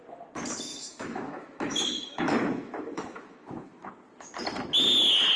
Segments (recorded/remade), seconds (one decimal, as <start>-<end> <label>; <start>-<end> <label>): 0.0-0.7 recorded; 0.7-3.9 remade; 3.9-5.4 recorded